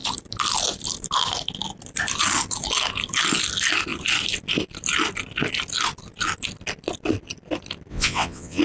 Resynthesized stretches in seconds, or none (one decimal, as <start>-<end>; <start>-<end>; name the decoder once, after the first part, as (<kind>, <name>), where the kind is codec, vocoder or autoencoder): 7.9-8.6 (vocoder, WaveNeXt)